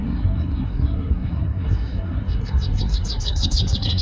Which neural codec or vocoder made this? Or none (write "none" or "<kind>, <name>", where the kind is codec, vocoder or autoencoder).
codec, SNAC